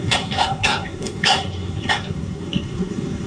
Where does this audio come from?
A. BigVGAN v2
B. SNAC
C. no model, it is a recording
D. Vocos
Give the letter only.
B